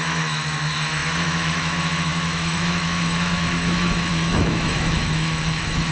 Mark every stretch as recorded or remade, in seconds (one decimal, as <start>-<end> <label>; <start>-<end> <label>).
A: 0.0-5.9 remade